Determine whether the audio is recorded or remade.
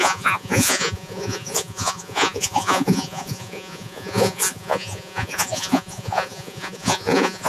remade